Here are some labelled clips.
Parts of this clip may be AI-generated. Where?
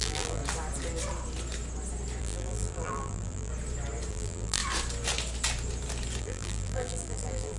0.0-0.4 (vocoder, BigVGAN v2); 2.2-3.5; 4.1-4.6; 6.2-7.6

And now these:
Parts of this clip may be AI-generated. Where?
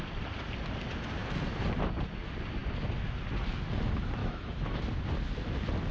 4.2-4.8 (autoencoder, DAC-VAE)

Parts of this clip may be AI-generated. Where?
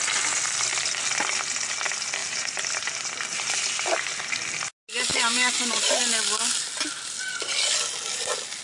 2.2-3.5 (vocoder, BigVGAN v2); 5.1-5.9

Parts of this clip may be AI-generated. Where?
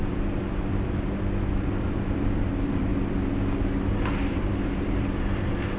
0.0-2.9 (vocoder, BigVGAN v2); 3.9-5.8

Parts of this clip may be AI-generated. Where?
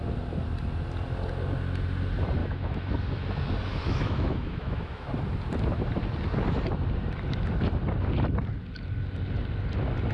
2.4-2.9 (autoencoder, DAC-VAE); 3.7-5.1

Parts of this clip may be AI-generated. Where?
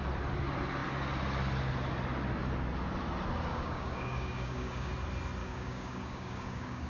3.5-4.9 (codec, DAC); 5.4-6.9